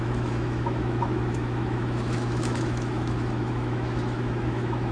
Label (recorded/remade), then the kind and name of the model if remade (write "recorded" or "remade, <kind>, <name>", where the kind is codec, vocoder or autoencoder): remade, autoencoder, DAC-VAE